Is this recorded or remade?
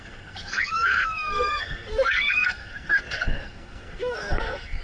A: remade